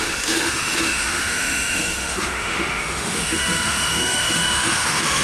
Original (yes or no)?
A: no